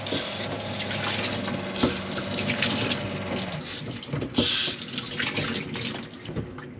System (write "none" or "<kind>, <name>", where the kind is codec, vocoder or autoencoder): none